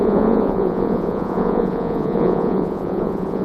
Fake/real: fake